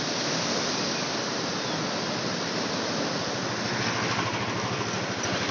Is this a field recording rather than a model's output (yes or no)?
yes